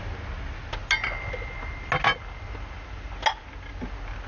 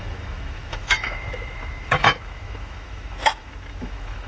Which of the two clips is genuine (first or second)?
first